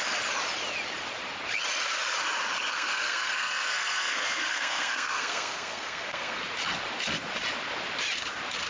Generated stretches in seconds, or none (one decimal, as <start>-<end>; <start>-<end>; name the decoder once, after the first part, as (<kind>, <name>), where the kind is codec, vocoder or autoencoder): 2.7-6.4 (codec, SNAC)